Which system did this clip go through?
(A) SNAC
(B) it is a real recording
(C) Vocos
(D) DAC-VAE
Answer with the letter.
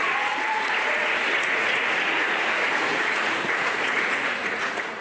C